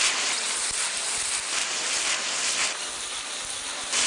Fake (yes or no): no